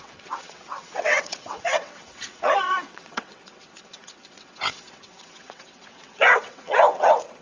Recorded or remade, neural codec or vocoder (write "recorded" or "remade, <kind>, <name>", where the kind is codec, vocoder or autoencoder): remade, vocoder, WaveNeXt